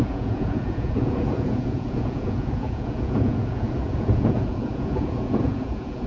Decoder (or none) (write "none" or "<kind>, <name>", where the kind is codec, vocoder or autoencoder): vocoder, Vocos